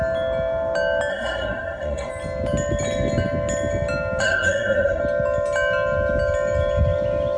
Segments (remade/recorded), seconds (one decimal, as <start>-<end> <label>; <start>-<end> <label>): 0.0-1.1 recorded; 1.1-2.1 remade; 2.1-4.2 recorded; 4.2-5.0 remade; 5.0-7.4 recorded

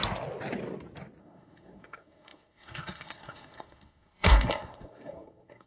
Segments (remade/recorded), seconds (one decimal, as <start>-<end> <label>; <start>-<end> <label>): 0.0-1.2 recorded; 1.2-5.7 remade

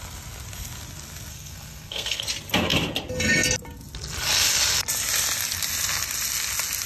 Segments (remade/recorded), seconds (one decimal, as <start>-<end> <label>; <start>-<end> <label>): 0.0-1.3 recorded; 1.3-2.2 remade; 2.2-6.9 recorded